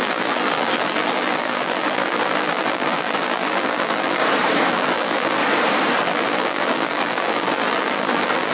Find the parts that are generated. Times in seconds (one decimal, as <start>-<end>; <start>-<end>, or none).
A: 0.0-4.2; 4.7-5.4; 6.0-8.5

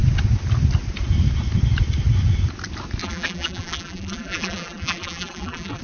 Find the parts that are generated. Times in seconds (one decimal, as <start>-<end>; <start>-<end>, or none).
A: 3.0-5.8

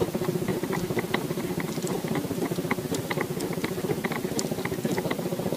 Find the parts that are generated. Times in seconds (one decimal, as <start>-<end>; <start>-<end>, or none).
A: 0.5-3.1

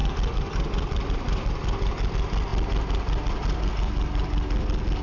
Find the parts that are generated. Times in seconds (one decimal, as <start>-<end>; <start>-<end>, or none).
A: 0.0-2.1